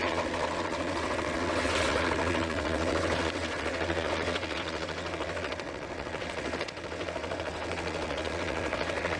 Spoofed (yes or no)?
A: yes